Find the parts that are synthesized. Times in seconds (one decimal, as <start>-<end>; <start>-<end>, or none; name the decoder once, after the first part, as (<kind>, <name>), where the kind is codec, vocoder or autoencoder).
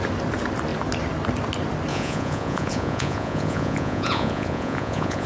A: 1.9-5.3 (vocoder, Vocos)